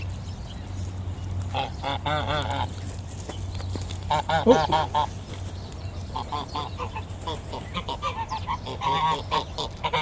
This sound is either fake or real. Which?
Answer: real